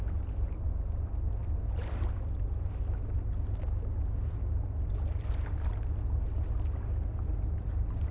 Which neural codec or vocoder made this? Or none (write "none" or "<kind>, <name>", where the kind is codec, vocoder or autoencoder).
none